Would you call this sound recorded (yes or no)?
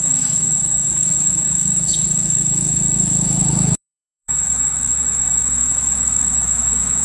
no